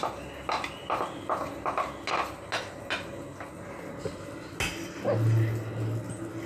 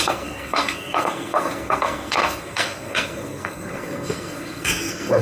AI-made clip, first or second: second